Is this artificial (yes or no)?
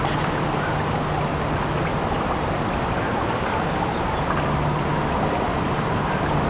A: no